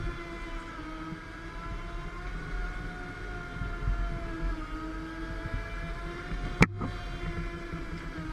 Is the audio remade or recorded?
recorded